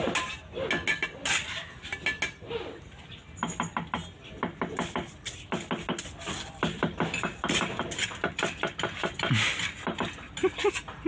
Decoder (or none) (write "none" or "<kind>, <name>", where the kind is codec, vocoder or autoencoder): none